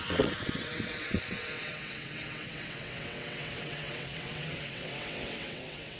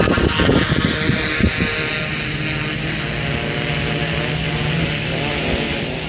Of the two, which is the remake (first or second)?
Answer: first